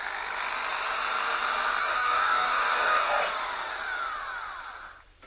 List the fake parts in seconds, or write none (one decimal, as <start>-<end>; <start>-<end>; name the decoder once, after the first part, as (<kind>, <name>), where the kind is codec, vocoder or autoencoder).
1.8-3.2 (codec, DAC)